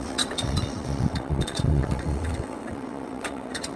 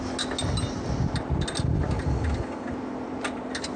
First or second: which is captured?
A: second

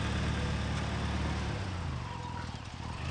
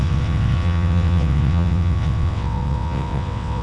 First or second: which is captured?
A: first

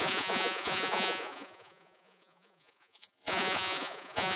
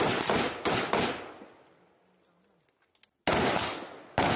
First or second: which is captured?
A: second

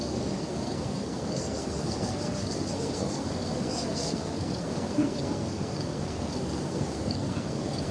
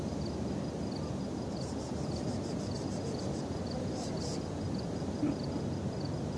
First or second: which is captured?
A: second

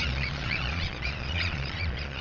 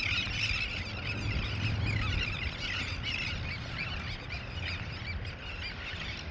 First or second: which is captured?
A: second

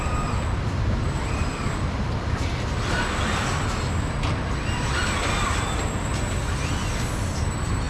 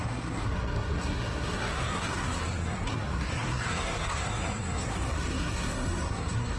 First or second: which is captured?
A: first